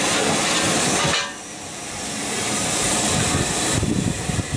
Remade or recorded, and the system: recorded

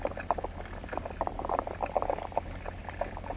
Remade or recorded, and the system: recorded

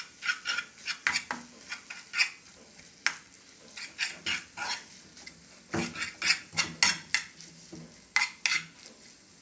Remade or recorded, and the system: recorded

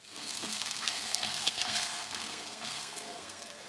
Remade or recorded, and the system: remade, codec, SNAC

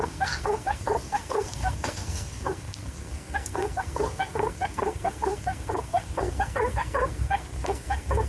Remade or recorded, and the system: remade, codec, SNAC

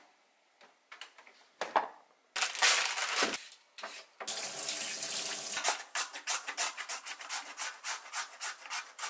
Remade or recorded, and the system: recorded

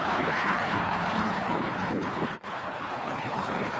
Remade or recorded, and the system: remade, codec, HILCodec